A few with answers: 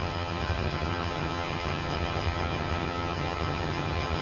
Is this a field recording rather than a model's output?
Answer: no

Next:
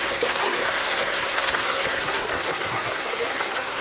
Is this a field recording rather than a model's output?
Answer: no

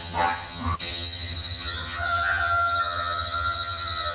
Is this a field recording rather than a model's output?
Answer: no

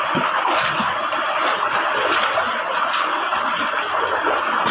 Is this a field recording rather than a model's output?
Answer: yes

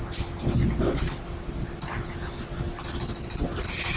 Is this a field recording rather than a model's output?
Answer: yes